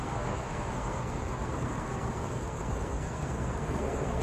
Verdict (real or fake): fake